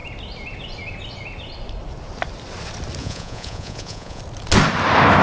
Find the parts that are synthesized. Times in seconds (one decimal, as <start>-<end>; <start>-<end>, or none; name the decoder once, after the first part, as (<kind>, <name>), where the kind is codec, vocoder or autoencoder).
3.0-4.2 (vocoder, Vocos)